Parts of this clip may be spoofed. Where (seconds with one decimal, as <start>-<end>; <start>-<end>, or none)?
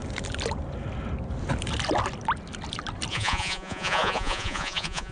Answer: 3.1-5.1